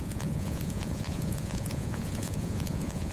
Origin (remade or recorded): remade